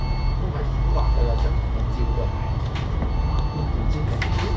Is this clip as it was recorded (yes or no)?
yes